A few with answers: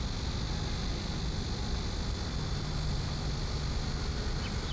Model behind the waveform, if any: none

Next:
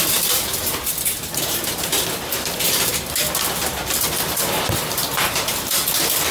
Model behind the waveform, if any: vocoder, BigVGAN v2